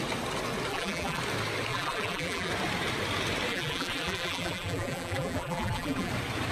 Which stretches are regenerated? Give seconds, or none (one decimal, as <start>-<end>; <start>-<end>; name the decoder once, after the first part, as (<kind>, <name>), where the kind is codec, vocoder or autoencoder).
0.7-1.2 (vocoder, BigVGAN v2); 1.7-2.5; 3.5-6.1